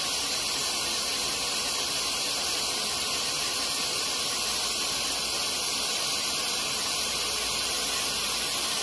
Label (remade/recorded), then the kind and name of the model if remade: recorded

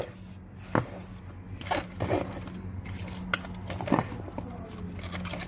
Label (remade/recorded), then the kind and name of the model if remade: recorded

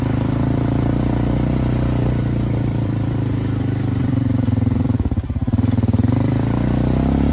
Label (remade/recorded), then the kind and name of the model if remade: remade, vocoder, BigVGAN v2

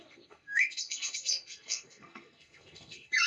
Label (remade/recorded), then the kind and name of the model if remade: remade, codec, SNAC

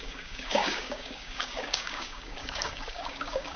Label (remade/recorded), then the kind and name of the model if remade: remade, codec, DAC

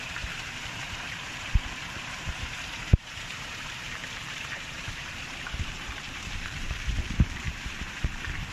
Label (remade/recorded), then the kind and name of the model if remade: remade, vocoder, BigVGAN v2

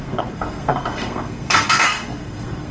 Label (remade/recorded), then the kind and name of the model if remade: remade, codec, SNAC